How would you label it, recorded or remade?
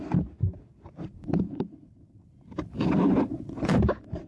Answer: remade